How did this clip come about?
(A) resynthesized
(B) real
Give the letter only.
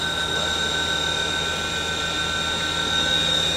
B